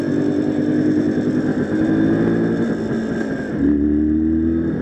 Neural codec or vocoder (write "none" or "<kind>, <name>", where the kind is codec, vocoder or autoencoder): none